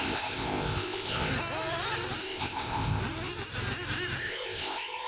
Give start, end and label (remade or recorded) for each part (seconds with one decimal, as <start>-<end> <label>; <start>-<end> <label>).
0.0-1.3 remade; 1.3-2.2 recorded; 2.2-3.0 remade; 3.0-4.2 recorded; 4.2-5.1 remade